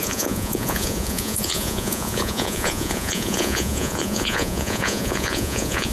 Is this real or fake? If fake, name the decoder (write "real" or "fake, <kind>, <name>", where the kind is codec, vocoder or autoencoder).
fake, vocoder, Vocos